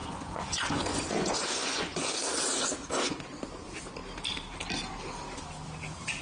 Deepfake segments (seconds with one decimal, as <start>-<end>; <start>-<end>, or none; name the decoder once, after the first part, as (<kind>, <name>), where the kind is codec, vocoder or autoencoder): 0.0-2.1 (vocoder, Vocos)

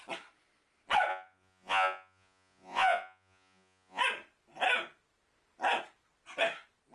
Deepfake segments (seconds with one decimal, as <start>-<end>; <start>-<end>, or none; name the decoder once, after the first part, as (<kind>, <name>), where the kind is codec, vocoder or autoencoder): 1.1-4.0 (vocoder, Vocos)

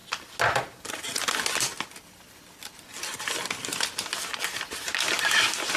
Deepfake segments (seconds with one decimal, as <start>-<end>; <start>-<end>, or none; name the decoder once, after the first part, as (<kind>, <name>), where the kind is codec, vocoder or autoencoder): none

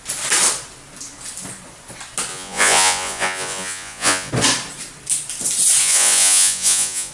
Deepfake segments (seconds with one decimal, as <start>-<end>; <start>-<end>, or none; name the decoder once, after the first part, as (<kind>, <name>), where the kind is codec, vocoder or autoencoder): 2.3-4.3 (vocoder, Vocos); 5.8-7.1

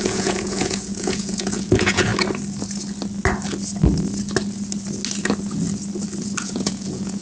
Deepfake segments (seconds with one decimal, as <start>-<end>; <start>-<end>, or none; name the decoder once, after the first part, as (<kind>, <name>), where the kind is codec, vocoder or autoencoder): 0.0-2.1 (vocoder, Vocos); 6.4-7.2